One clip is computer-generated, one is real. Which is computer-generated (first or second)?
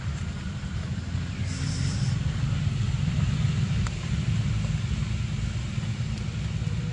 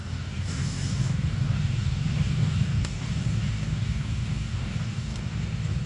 second